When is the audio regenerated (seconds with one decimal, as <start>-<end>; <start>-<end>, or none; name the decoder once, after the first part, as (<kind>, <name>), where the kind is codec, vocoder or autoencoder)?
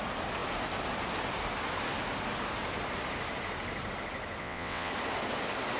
4.4-4.9 (vocoder, WaveNeXt)